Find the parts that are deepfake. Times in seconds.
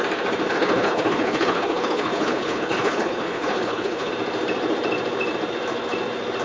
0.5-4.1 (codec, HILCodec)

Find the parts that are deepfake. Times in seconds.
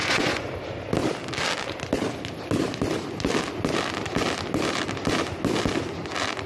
0.0-0.5 (vocoder, Vocos)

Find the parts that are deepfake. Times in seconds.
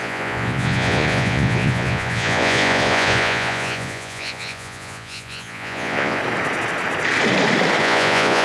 0.0-6.2 (vocoder, Vocos); 7.8-8.4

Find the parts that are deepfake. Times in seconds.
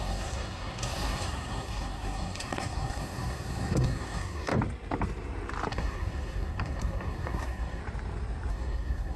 0.0-4.5 (codec, SNAC); 5.7-7.8; 8.5-9.2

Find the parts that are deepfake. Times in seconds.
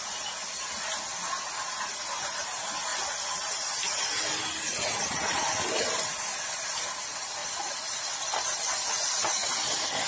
none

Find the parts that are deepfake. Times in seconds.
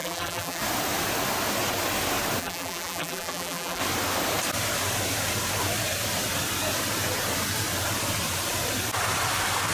0.0-0.6 (vocoder, BigVGAN v2); 2.4-3.8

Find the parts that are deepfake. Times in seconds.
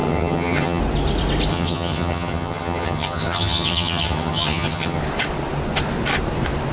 0.0-0.8 (vocoder, HiFi-GAN); 1.5-5.0